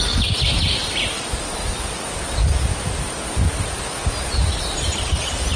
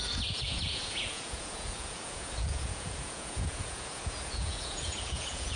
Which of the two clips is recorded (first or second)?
first